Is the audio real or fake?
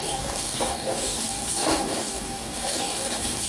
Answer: fake